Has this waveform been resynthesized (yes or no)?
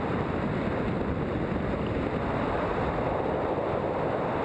no